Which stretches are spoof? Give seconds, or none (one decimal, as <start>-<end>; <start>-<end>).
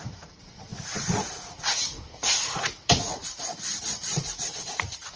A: 0.0-5.2